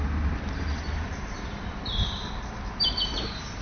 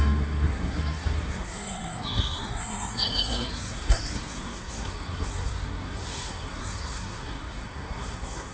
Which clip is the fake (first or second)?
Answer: second